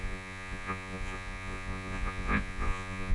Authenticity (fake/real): fake